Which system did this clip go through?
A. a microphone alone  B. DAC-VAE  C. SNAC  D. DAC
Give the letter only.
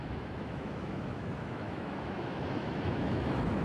B